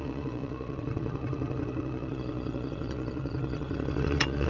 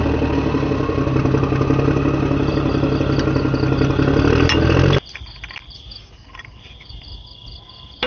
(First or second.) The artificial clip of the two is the first